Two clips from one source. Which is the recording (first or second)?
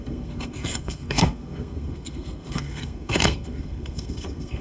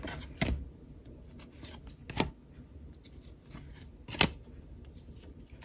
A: second